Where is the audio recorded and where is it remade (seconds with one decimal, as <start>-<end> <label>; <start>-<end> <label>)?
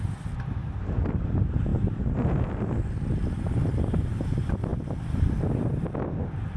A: 0.0-6.6 recorded